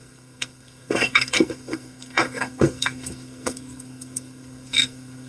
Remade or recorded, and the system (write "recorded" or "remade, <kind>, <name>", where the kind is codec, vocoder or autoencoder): remade, codec, SNAC